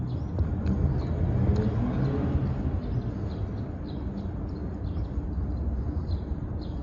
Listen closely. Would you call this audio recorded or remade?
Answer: recorded